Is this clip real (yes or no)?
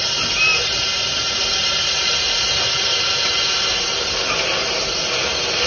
yes